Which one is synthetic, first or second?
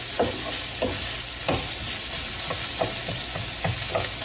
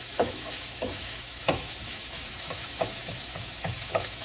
second